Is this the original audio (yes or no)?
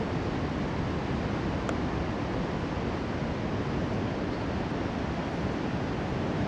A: yes